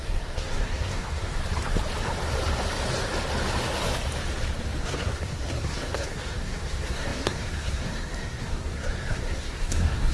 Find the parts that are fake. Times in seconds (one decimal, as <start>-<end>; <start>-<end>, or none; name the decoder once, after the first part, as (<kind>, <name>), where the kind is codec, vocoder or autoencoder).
0.0-1.4 (codec, SNAC); 4.8-10.1